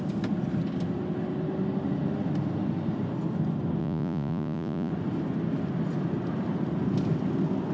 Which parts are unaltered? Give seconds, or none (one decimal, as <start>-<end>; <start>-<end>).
0.0-3.8; 4.9-7.7